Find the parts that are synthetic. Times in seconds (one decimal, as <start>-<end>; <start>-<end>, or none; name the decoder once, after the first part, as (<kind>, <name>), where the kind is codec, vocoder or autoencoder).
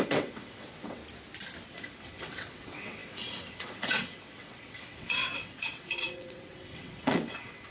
0.0-1.0 (vocoder, WaveNeXt); 1.7-7.7